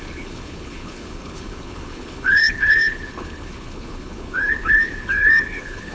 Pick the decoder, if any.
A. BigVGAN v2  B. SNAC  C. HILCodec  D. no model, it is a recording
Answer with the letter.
C